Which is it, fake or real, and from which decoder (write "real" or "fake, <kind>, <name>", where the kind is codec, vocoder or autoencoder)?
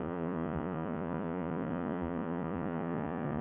fake, vocoder, Vocos